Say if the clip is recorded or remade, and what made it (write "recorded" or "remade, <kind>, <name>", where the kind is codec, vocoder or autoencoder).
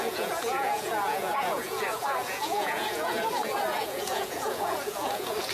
remade, vocoder, Vocos